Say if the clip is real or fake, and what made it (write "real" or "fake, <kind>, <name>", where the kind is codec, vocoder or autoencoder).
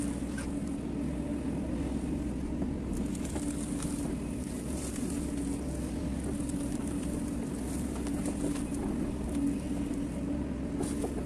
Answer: real